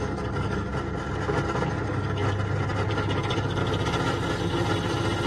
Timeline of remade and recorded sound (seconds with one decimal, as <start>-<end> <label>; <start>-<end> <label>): 0.0-0.7 remade; 0.7-1.7 recorded; 1.7-2.2 remade; 2.2-2.9 recorded; 2.9-3.6 remade; 3.6-5.3 recorded